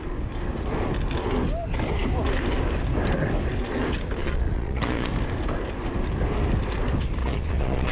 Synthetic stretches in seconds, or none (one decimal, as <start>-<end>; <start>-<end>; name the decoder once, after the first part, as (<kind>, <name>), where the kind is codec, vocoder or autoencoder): 4.2-5.1 (vocoder, Vocos); 7.2-7.9